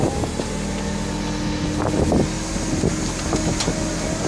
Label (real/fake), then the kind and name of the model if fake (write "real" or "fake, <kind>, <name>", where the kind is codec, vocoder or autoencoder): real